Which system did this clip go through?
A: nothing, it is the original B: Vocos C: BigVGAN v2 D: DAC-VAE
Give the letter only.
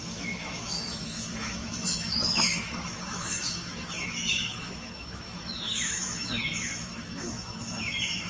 D